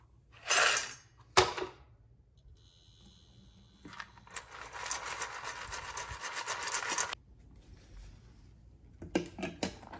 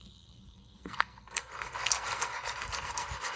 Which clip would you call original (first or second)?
first